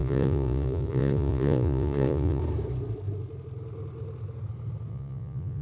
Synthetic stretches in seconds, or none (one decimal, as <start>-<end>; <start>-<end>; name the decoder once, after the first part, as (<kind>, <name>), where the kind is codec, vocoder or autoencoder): 0.0-2.4 (vocoder, Vocos); 4.9-5.6